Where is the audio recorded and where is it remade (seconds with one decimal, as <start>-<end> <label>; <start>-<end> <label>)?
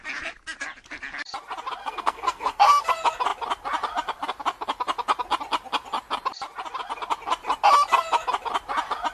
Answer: 0.0-1.8 recorded; 1.8-2.9 remade; 2.9-9.1 recorded